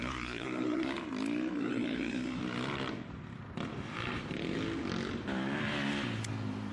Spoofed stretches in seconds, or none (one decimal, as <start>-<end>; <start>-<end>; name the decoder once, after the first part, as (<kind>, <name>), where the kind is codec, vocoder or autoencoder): 0.0-0.9 (codec, SNAC); 1.6-2.4